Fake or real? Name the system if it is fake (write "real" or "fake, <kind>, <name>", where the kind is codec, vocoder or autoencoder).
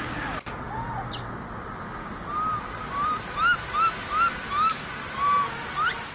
real